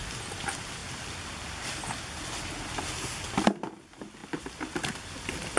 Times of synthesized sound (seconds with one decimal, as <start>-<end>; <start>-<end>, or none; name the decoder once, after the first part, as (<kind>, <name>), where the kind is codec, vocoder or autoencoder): none

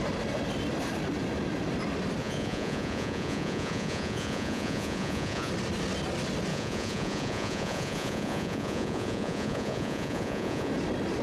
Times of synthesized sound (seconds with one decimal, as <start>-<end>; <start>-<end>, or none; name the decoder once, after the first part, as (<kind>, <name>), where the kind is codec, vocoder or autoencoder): 2.2-5.5 (vocoder, Vocos); 6.5-10.7

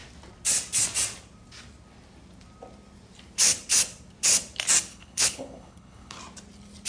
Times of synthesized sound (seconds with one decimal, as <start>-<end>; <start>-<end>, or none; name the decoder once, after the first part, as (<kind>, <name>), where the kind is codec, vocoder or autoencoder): 4.9-6.2 (codec, HILCodec)